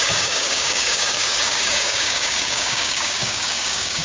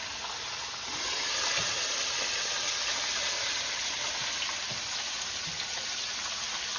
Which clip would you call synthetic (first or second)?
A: first